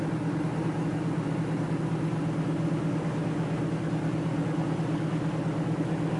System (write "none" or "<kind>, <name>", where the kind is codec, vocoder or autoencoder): none